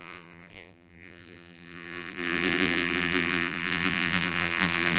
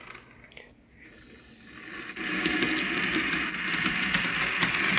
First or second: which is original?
second